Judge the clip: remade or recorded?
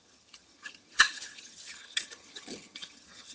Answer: remade